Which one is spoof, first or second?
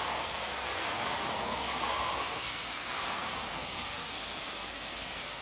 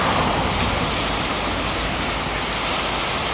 first